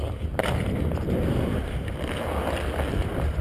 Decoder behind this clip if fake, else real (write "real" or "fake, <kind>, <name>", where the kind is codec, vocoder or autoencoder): real